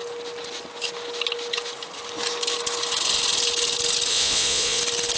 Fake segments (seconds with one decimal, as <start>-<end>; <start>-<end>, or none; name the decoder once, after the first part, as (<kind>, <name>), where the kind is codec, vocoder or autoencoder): 4.1-4.8 (vocoder, Vocos)